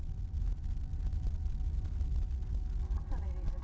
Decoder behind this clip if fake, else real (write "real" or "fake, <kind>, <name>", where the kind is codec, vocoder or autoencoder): real